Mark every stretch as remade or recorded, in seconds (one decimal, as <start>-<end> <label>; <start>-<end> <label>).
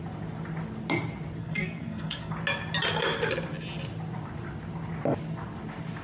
0.0-1.4 recorded; 1.4-2.3 remade; 2.3-6.0 recorded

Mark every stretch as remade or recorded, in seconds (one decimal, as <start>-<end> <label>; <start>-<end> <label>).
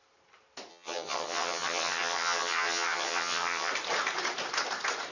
0.0-0.7 recorded; 0.7-3.7 remade; 3.7-5.1 recorded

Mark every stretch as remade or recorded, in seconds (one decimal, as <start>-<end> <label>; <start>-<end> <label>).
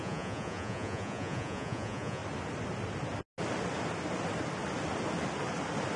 0.0-2.2 remade; 2.2-6.0 recorded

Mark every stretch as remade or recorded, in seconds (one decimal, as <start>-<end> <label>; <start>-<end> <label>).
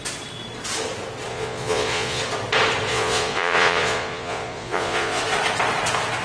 0.0-1.3 recorded; 1.3-2.2 remade; 2.2-2.9 recorded; 2.9-5.2 remade; 5.2-6.2 recorded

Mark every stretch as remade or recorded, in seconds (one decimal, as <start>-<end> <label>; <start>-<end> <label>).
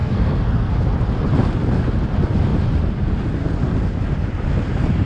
0.0-0.7 remade; 0.7-5.1 recorded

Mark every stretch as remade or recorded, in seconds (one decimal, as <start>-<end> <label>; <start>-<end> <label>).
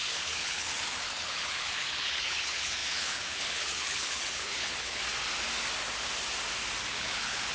0.0-5.0 remade; 5.0-6.9 recorded; 6.9-7.5 remade